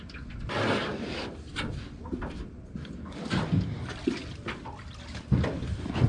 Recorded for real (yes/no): yes